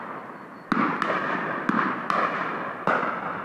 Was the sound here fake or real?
real